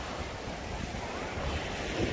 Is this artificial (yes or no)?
no